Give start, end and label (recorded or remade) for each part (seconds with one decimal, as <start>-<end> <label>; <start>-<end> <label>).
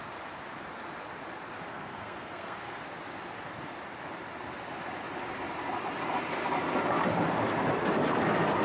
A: 0.0-1.7 recorded; 1.7-2.8 remade; 2.8-8.6 recorded